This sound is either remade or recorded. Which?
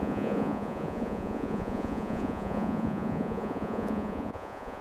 remade